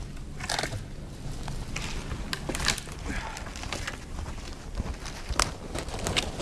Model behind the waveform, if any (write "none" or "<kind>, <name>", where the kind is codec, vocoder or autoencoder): none